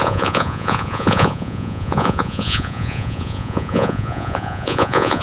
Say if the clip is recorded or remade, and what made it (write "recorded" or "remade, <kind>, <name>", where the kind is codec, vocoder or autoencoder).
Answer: remade, vocoder, Vocos